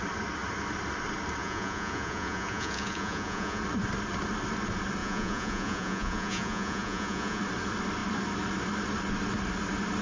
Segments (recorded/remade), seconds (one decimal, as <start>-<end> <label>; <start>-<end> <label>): 0.0-1.4 recorded; 1.4-3.6 remade; 3.6-5.0 recorded; 5.0-7.4 remade; 7.4-10.0 recorded